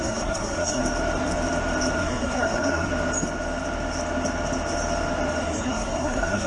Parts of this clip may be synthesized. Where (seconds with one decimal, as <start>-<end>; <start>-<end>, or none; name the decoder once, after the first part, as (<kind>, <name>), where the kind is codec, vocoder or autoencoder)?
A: 0.0-0.8 (codec, SNAC); 2.0-2.9; 5.4-6.5